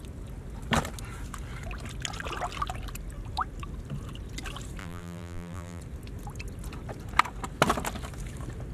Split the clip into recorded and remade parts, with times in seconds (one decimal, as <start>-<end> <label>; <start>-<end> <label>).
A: 0.0-4.8 recorded; 4.8-5.8 remade; 5.8-8.7 recorded